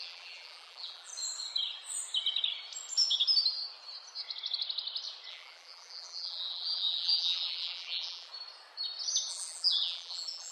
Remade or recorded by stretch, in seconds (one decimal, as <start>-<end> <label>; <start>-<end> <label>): 0.0-1.1 remade; 1.1-5.3 recorded; 5.3-8.3 remade; 8.3-9.3 recorded; 9.3-10.5 remade